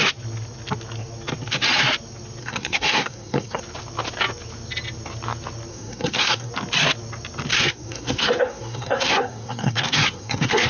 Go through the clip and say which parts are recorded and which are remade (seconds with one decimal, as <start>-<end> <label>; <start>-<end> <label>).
0.0-2.4 recorded; 2.4-3.6 remade; 3.6-5.7 recorded; 5.7-6.5 remade; 6.5-7.5 recorded; 7.5-10.7 remade